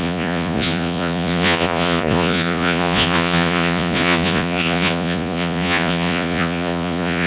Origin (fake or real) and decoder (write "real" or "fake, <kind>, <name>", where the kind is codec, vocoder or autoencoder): fake, vocoder, Vocos